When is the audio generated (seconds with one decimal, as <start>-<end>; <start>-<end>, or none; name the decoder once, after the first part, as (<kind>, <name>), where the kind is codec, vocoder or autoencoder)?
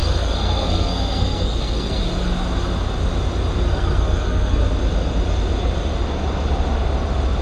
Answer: 0.0-2.0 (codec, SNAC); 3.7-4.6